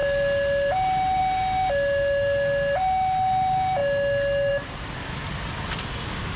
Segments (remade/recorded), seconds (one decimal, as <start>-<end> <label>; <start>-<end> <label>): 0.0-6.4 recorded